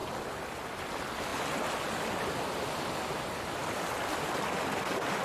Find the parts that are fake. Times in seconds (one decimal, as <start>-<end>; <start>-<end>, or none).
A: none

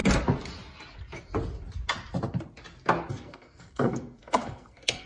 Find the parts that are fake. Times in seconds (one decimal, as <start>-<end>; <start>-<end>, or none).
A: 3.1-5.1

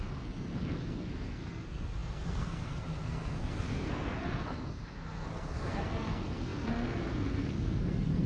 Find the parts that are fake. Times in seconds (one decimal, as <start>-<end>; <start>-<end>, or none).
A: 0.0-8.3

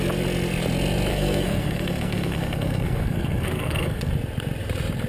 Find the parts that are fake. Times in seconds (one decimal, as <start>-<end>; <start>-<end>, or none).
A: 1.1-4.1

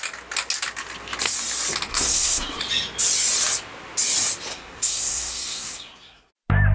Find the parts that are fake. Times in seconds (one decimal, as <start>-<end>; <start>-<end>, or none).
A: 1.9-2.6; 4.5-6.3